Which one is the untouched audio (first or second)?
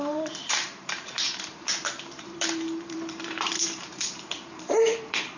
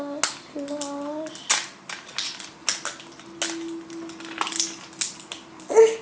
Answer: second